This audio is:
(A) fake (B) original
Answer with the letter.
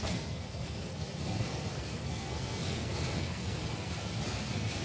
A